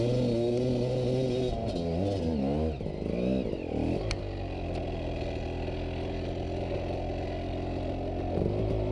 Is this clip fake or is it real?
real